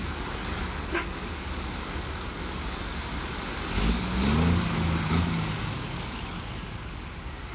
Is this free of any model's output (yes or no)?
no